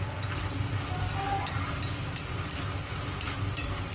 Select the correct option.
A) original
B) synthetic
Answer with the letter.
A